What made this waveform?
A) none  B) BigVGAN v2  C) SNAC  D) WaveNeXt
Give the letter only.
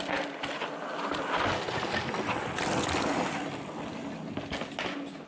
A